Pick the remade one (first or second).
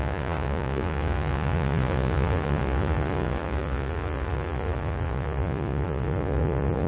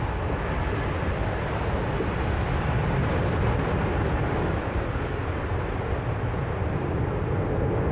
first